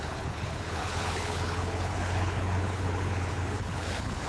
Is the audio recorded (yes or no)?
no